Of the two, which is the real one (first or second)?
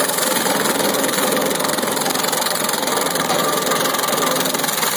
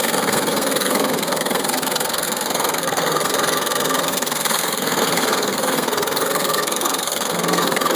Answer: first